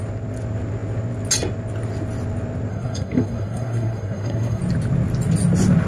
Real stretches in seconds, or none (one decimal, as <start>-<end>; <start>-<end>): 0.0-2.7; 4.6-5.9